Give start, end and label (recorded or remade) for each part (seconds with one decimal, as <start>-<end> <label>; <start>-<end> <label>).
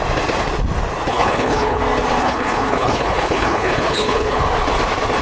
0.0-1.1 recorded; 1.1-1.8 remade; 1.8-2.2 recorded; 2.2-4.4 remade; 4.4-5.2 recorded